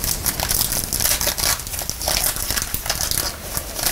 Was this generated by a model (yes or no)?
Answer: no